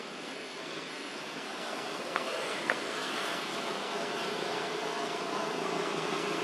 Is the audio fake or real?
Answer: fake